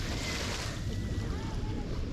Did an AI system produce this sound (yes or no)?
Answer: no